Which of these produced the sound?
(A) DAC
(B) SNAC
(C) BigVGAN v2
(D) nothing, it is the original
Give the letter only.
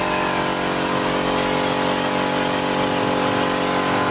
D